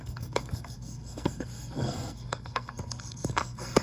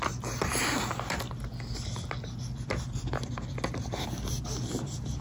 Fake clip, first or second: first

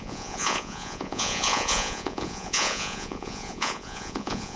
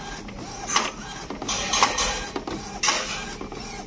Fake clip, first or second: first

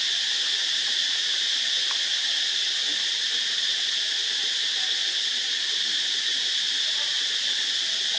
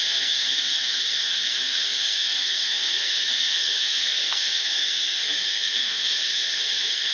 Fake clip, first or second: second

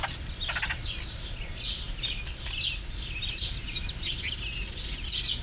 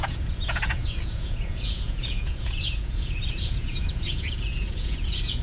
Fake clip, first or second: second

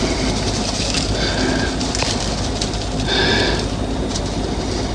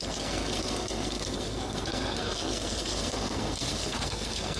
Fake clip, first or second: second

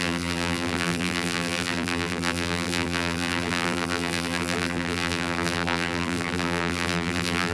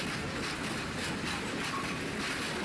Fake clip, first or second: first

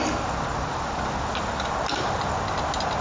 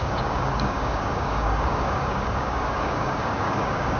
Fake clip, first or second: second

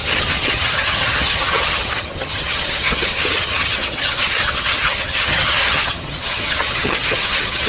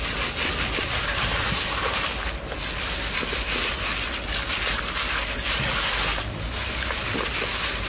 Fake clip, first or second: first